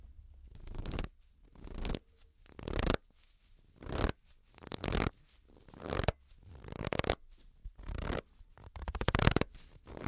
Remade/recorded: recorded